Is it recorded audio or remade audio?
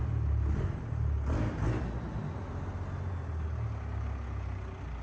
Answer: recorded